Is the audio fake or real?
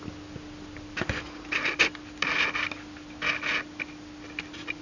real